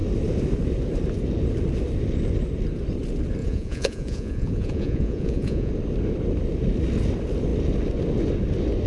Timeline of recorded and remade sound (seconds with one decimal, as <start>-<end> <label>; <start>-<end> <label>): 0.0-3.4 recorded; 3.4-5.7 remade; 5.7-8.9 recorded